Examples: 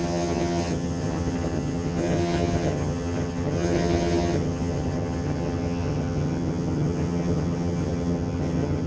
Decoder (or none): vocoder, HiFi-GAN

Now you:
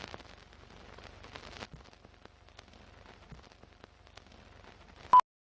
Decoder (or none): none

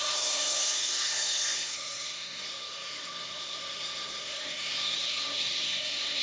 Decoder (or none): codec, SNAC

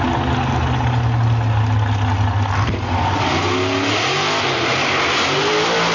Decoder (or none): none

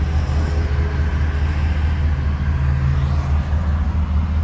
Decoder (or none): none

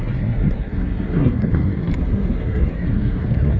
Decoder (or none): codec, SNAC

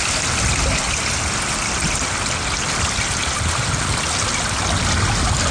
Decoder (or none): none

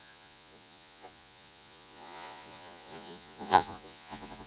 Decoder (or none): vocoder, Vocos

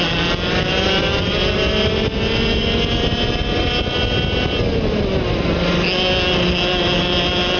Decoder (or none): none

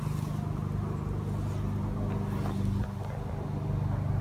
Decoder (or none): none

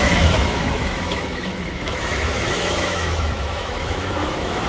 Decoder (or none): autoencoder, DAC-VAE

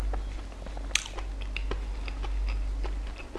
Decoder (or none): none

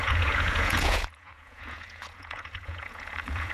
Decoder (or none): vocoder, Vocos